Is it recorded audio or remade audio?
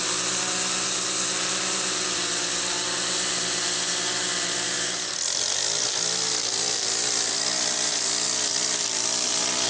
recorded